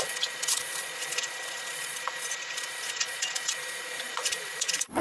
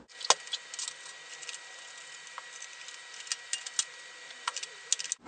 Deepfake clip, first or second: first